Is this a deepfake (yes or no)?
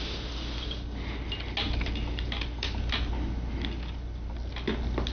no